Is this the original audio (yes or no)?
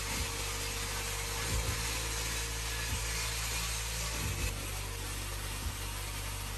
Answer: yes